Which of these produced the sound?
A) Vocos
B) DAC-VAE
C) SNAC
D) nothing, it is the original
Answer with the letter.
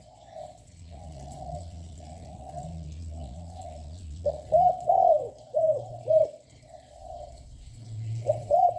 A